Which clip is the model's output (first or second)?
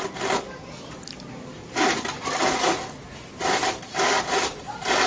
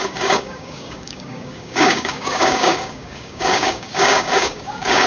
second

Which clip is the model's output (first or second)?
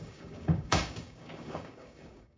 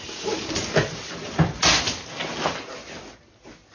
first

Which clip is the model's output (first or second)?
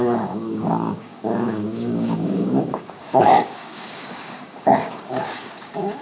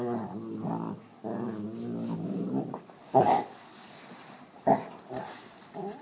first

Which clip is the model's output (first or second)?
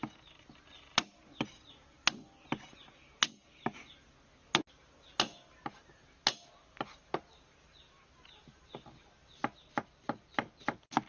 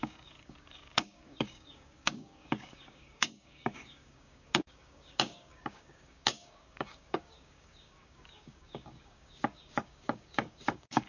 second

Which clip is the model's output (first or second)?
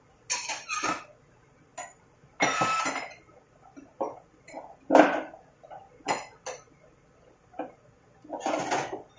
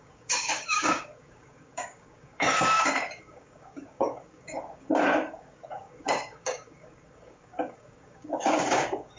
second